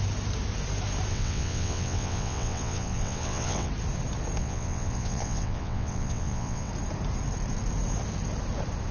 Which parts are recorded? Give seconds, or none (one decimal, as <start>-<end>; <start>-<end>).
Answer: 0.0-1.1; 3.7-4.4; 6.7-8.9